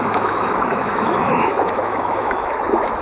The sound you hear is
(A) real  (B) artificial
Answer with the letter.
B